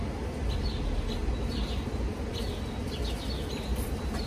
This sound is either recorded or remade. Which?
recorded